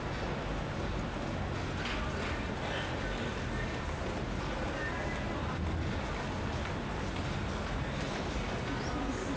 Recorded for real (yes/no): yes